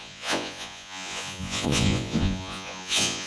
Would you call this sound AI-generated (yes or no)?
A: yes